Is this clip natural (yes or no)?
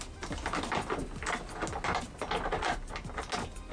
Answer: yes